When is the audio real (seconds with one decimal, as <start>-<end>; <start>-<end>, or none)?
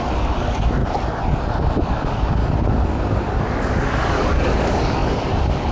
0.8-1.8; 2.4-3.4